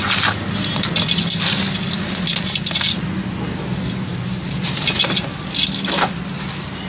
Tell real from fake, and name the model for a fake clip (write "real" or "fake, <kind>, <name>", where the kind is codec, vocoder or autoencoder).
real